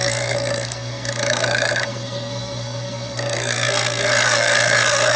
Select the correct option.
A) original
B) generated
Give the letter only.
B